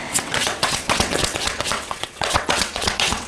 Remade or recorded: remade